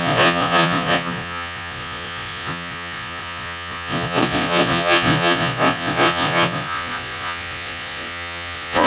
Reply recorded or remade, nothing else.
remade